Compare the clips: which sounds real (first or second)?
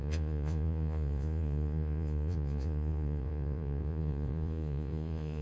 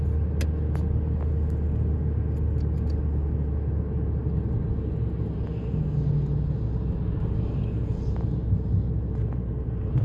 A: second